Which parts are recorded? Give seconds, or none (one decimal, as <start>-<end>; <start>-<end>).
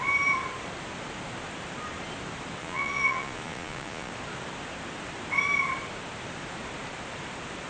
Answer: 0.0-2.6; 4.1-7.7